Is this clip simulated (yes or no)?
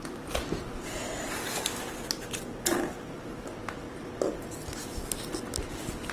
no